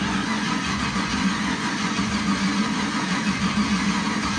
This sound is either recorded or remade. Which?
remade